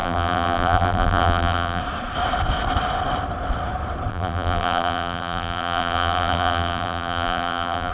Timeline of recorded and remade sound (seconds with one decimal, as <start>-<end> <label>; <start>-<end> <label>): 0.0-1.8 remade; 1.8-4.1 recorded; 4.1-7.9 remade